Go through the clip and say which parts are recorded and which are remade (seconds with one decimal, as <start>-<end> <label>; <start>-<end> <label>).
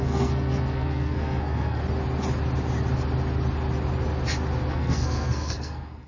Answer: 0.0-1.8 remade; 1.8-4.7 recorded; 4.7-6.1 remade